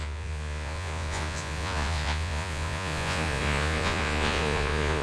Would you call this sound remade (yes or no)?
yes